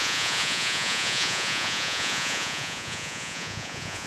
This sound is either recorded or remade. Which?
remade